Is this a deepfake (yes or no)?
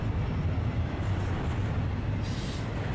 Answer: no